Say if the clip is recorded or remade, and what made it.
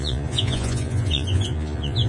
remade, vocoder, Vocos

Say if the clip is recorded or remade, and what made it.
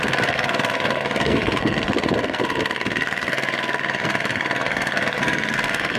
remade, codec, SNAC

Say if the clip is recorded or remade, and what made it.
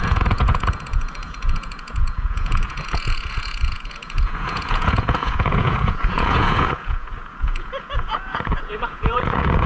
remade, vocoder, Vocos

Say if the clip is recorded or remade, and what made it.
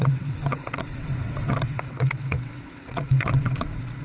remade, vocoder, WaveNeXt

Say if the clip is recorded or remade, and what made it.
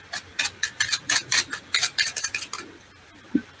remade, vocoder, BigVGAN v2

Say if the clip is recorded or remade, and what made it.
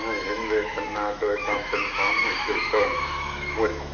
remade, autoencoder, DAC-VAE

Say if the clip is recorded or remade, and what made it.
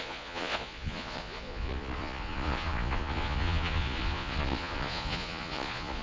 remade, vocoder, Vocos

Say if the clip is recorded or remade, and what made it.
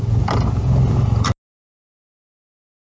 recorded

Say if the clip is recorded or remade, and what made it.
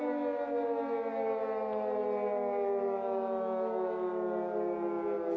recorded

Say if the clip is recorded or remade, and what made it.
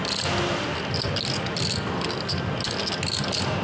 recorded